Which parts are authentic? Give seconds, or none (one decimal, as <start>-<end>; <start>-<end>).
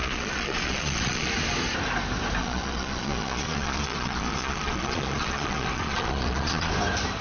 1.3-2.4; 6.7-7.2